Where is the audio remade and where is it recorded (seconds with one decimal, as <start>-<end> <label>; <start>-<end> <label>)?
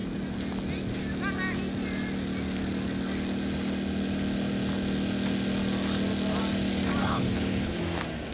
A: 0.0-7.0 recorded; 7.0-7.8 remade; 7.8-8.3 recorded